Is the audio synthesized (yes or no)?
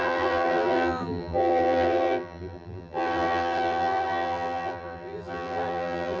yes